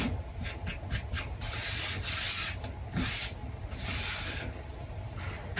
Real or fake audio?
real